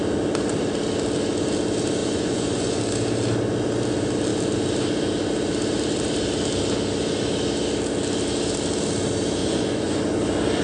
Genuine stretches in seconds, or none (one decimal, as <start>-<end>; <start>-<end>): 0.0-2.0; 2.8-9.4; 10.0-10.6